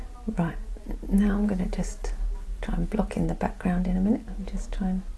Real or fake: real